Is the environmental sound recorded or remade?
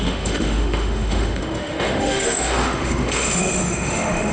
remade